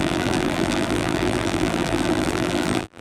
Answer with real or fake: fake